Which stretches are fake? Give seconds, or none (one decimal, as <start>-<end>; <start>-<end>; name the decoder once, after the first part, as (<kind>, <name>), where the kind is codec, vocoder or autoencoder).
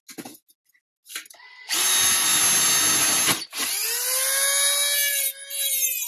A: none